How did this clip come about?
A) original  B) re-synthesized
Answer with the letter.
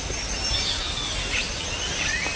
A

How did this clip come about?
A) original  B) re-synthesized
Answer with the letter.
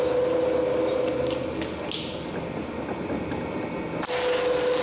A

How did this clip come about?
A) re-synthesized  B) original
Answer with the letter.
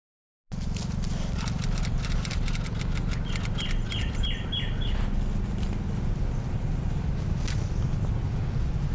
B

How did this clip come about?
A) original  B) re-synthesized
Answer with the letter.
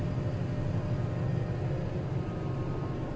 A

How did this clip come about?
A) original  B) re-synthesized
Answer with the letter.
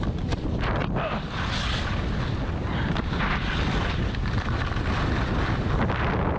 A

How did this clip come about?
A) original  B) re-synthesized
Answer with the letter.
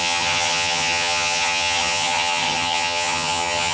B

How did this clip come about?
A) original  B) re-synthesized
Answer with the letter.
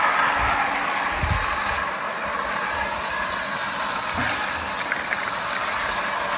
A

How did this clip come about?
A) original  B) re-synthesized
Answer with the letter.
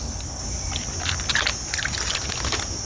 A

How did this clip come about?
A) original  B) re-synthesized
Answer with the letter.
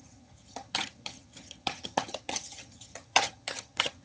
B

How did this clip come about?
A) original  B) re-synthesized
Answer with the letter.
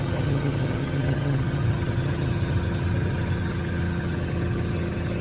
B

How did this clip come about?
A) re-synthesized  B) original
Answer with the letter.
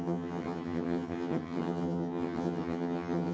A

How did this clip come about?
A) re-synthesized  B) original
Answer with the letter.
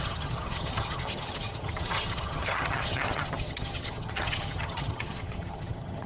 A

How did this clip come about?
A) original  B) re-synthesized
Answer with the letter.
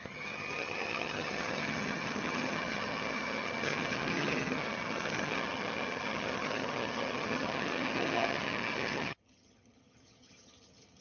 B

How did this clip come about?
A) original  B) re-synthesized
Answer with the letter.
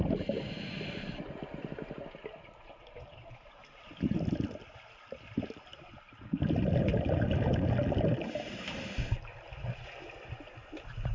A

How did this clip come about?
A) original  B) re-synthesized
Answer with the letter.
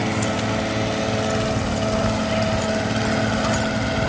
A